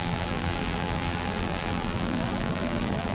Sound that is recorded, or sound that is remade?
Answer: remade